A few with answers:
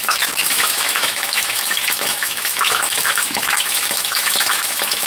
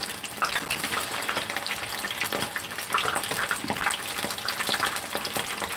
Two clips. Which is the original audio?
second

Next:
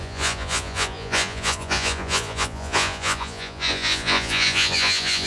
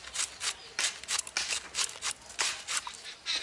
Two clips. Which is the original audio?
second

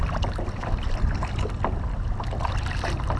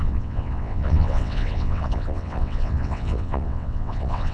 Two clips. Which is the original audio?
first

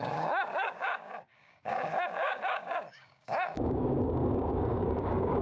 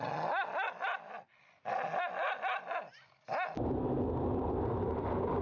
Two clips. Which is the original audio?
second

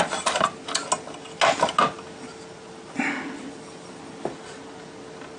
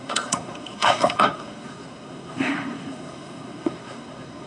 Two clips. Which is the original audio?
first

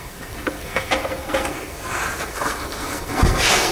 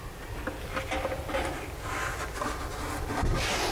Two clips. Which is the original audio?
second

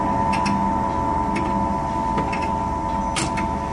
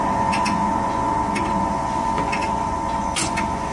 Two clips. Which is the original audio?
first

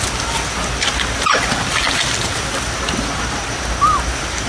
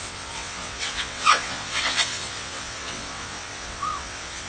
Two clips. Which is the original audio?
first